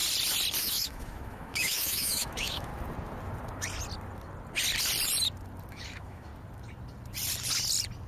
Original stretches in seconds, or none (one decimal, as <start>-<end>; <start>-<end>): 0.0-0.6; 2.7-5.7; 6.3-8.1